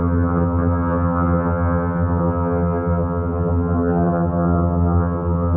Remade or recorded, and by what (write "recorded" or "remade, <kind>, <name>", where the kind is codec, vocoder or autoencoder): remade, vocoder, HiFi-GAN